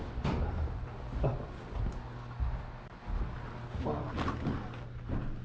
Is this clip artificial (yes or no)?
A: no